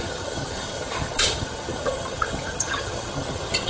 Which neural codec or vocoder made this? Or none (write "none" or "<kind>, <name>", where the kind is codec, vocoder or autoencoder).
vocoder, HiFi-GAN